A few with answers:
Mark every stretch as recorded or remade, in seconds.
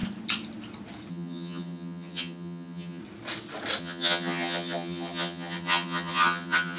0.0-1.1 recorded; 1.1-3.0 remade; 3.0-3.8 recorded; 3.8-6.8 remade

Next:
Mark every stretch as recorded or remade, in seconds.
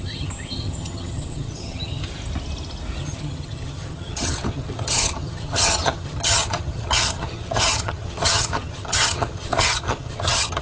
0.0-2.1 remade; 2.1-3.0 recorded; 3.0-10.6 remade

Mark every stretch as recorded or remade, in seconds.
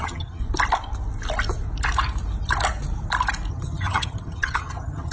0.0-0.4 remade; 0.4-3.5 recorded; 3.5-5.1 remade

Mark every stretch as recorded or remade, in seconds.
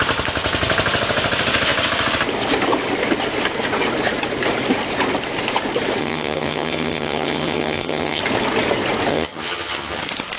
0.0-6.0 recorded; 6.0-8.2 remade; 8.2-9.1 recorded; 9.1-10.0 remade; 10.0-10.4 recorded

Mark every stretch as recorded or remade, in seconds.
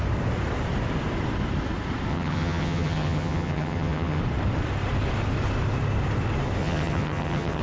0.0-2.1 recorded; 2.1-4.2 remade; 4.2-6.6 recorded; 6.6-7.6 remade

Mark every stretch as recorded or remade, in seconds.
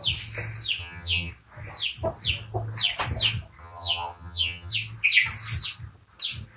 0.0-0.8 recorded; 0.8-1.3 remade; 1.3-3.6 recorded; 3.6-4.7 remade; 4.7-6.6 recorded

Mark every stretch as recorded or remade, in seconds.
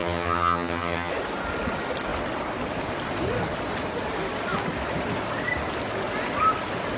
0.0-1.1 remade; 1.1-7.0 recorded